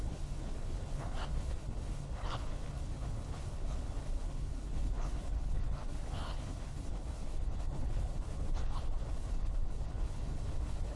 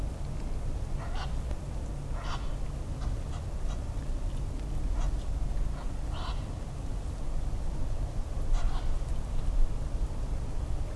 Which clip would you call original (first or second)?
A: second